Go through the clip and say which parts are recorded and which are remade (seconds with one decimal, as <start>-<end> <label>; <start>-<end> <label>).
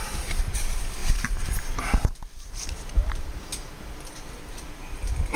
0.0-1.0 remade; 1.0-2.4 recorded; 2.4-3.5 remade; 3.5-4.1 recorded; 4.1-5.4 remade